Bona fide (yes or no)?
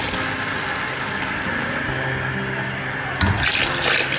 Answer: yes